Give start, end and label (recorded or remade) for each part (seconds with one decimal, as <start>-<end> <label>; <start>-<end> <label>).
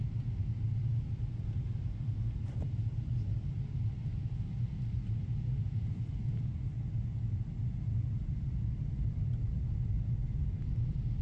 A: 0.0-11.2 recorded